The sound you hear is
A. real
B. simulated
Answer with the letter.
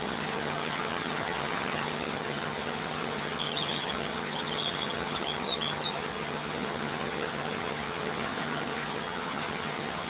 B